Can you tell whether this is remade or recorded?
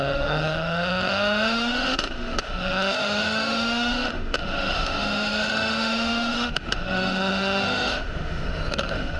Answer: remade